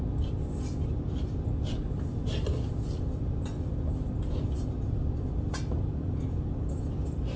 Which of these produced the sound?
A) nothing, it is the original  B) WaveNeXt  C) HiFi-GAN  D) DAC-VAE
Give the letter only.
A